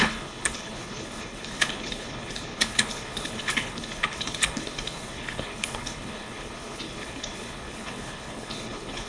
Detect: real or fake fake